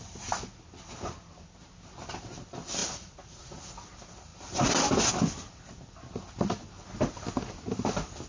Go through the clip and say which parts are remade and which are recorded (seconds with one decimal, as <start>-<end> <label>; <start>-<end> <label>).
0.0-2.8 recorded; 2.8-3.6 remade; 3.6-8.3 recorded